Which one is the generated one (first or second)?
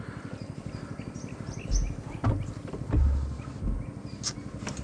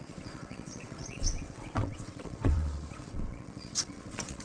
second